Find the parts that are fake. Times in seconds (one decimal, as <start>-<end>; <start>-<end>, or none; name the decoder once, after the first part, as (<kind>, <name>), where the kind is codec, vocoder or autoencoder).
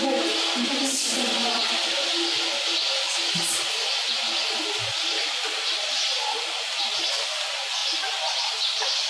none